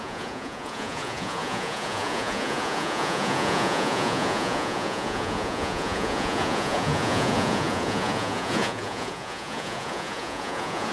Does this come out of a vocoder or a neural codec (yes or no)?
yes